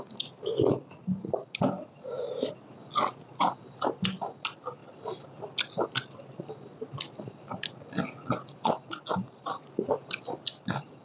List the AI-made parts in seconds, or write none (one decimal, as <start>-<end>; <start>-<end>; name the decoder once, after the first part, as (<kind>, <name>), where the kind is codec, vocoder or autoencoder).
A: none

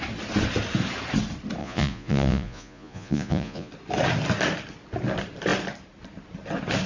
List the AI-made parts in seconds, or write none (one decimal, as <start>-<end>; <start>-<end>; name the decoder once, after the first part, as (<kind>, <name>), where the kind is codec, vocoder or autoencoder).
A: 1.6-3.7 (vocoder, Vocos)

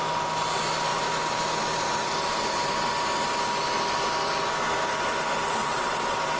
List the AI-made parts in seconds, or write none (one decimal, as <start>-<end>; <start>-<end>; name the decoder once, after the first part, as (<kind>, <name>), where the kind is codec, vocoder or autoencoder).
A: 5.6-6.4 (vocoder, WaveNeXt)

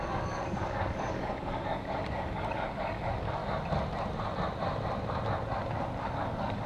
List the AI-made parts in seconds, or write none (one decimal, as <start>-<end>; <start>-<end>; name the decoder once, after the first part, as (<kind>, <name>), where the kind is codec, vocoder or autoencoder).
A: 0.0-3.4 (codec, DAC); 6.0-6.7

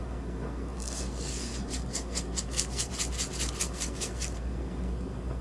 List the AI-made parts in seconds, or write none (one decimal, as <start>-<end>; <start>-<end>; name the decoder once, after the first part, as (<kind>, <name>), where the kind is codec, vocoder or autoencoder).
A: 0.0-2.9 (codec, SNAC); 3.6-5.4

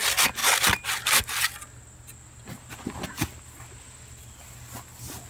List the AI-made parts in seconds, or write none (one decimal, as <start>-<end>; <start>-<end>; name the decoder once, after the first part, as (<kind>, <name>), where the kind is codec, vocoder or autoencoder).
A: none

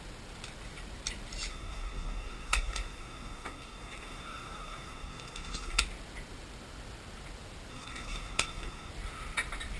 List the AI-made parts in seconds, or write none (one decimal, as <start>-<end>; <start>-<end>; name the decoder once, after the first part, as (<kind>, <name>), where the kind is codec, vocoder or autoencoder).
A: 1.5-5.8 (codec, SNAC); 7.7-8.9

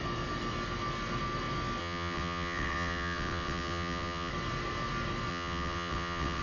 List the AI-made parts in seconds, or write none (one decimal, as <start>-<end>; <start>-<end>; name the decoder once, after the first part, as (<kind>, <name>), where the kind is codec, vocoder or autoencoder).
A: 1.8-4.3 (vocoder, WaveNeXt); 5.3-6.4